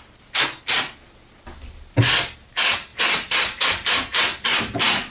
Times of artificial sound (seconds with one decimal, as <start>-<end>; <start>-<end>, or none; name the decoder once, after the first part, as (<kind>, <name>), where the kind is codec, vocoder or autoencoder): none